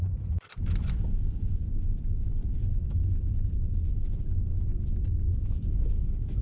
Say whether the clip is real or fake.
real